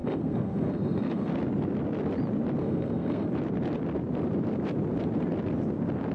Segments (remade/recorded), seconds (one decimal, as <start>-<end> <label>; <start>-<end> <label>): 0.0-1.3 remade; 1.3-2.6 recorded; 2.6-3.3 remade; 3.3-6.1 recorded